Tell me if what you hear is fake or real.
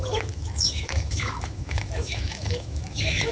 fake